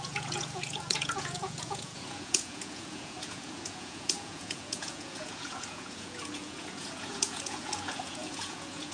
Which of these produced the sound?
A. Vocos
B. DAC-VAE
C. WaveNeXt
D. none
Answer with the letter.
A